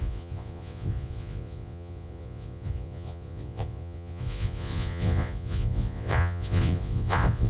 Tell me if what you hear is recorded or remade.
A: remade